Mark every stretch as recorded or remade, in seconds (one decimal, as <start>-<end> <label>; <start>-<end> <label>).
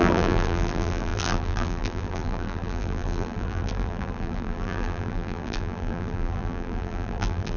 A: 0.0-7.6 remade